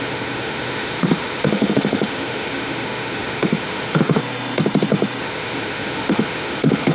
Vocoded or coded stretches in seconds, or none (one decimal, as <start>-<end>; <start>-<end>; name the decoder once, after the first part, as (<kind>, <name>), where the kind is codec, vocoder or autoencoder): 0.0-4.2 (autoencoder, DAC-VAE); 5.2-6.9

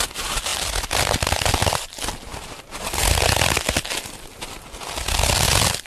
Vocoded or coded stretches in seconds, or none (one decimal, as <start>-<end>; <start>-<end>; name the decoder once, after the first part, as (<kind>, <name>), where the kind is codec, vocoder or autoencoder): none

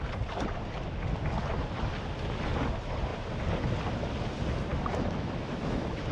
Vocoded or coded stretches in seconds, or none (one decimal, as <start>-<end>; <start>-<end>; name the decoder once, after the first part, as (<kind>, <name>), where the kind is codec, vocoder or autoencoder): 4.7-6.1 (autoencoder, DAC-VAE)

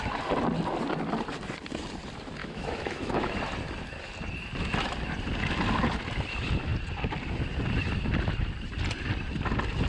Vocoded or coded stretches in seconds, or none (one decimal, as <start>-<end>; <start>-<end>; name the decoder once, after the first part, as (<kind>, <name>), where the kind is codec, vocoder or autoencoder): 2.4-3.4 (autoencoder, DAC-VAE)

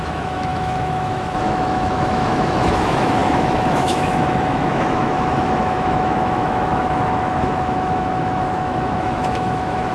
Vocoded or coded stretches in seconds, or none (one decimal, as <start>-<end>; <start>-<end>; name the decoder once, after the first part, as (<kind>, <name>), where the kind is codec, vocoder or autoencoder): 0.0-9.9 (autoencoder, DAC-VAE)

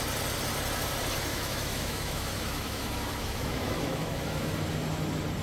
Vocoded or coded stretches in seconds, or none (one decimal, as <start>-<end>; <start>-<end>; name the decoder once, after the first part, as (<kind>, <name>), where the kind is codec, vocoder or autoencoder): 1.3-4.5 (autoencoder, DAC-VAE)

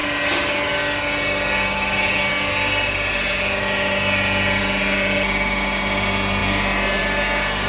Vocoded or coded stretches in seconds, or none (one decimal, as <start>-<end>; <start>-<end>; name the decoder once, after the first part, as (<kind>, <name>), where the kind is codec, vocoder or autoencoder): none